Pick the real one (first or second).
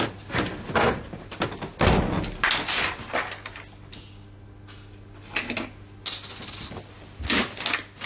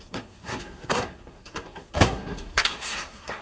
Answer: first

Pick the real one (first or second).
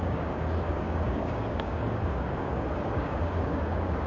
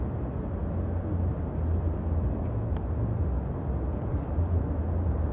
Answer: second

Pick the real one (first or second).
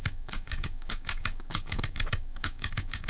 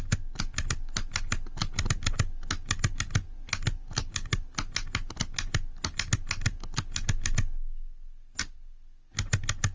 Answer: second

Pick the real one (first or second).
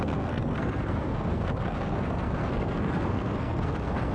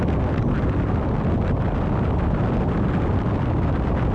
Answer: second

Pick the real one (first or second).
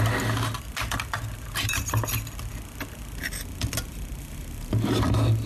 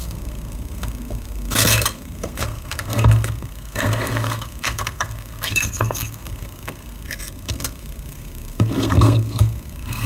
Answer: first